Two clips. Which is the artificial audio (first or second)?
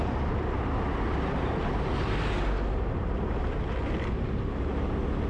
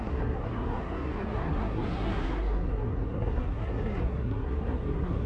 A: second